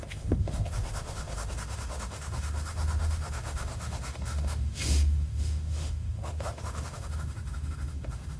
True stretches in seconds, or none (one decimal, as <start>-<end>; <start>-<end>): none